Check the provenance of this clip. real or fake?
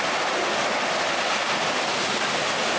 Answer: real